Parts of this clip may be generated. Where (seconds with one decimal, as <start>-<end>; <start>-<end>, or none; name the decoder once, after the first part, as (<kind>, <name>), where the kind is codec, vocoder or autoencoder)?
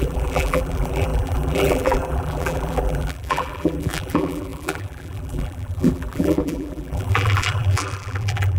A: 0.0-8.6 (vocoder, BigVGAN v2)